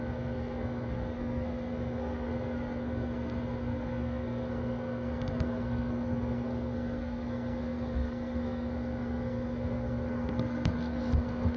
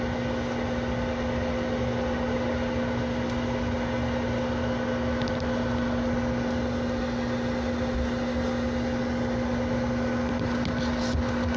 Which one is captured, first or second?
second